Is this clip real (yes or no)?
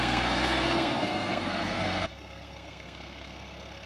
no